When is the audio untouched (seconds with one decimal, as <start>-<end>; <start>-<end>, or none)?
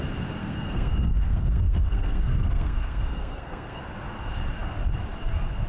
0.0-0.4; 3.8-5.7